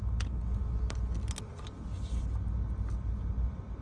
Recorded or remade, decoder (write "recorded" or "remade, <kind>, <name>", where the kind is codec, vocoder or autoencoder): recorded